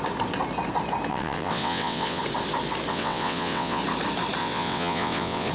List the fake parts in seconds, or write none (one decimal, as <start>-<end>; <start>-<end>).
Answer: 1.1-2.2; 2.9-3.8; 4.4-5.5